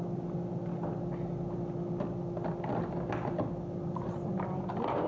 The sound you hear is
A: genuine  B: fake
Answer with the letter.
A